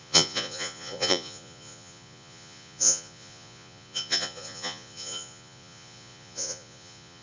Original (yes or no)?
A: no